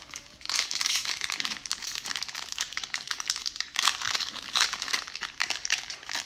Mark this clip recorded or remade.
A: remade